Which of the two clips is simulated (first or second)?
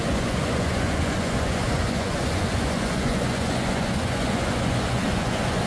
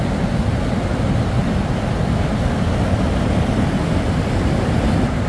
first